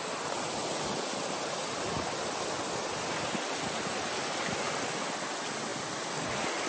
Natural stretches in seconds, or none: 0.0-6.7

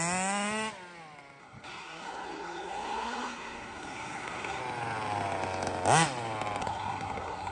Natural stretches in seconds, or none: 0.0-1.4; 4.6-6.6